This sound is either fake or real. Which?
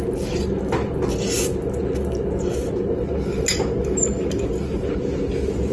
real